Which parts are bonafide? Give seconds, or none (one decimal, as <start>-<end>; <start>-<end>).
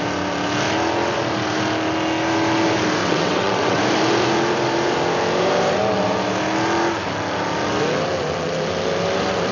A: 0.0-3.0; 3.8-9.5